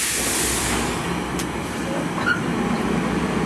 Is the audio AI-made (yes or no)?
no